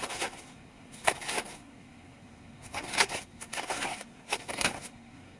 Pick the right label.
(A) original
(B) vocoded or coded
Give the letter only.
B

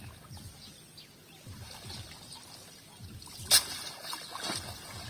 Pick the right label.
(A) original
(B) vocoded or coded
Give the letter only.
A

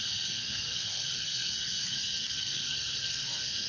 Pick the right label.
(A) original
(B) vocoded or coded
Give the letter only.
B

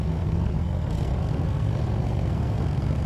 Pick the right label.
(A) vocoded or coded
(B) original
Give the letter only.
A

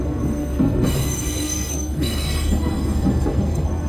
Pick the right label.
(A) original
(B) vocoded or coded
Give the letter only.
B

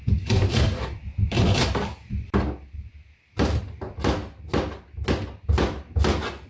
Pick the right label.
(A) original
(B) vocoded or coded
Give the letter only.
A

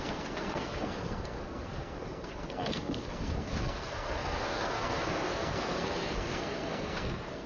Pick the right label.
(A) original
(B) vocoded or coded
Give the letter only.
B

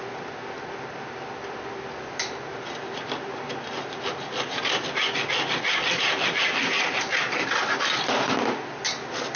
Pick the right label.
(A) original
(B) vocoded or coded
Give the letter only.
A